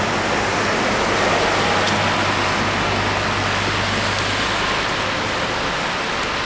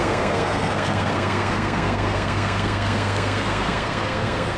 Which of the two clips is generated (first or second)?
second